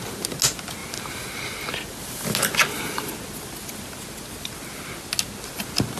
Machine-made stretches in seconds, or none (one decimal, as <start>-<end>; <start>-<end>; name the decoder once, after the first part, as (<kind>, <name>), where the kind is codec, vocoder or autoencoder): none